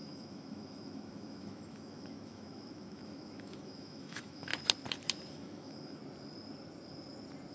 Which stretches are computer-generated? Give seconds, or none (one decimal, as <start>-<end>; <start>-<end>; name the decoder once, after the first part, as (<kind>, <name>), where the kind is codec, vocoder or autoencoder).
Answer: 0.0-4.5 (autoencoder, DAC-VAE); 5.3-6.0